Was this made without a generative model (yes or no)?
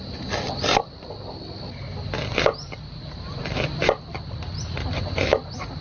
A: no